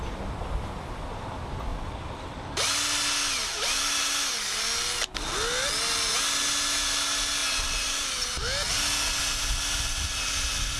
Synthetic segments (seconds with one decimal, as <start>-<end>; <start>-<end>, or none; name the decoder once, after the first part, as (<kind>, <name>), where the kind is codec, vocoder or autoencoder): none